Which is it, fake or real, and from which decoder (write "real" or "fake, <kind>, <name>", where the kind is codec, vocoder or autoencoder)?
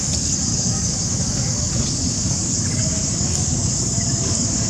fake, codec, DAC